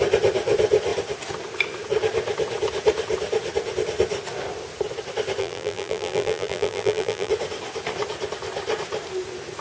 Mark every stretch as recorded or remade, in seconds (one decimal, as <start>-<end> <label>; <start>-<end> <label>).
0.0-5.4 recorded; 5.4-7.3 remade; 7.3-9.6 recorded